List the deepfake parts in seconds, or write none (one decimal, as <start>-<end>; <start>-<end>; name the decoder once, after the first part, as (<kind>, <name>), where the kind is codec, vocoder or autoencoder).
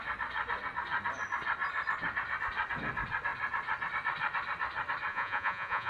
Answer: 5.1-5.9 (vocoder, Vocos)